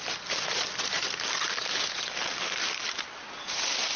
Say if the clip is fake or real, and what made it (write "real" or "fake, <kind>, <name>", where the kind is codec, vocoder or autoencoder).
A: real